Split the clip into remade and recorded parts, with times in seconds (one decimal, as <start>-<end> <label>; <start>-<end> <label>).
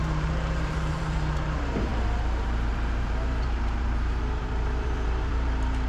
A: 0.0-5.9 remade